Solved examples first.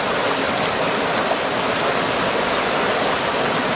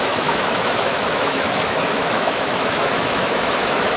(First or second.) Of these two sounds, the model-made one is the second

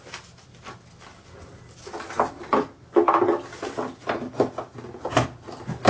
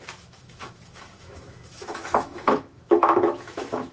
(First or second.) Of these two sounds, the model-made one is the second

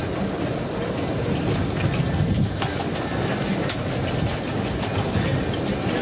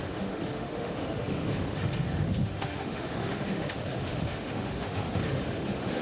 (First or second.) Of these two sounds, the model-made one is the second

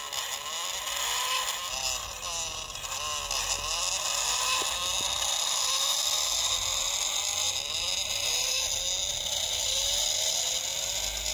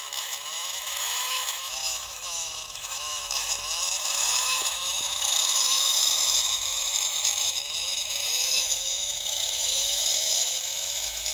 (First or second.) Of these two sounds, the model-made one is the second